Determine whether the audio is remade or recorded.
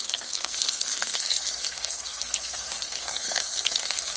remade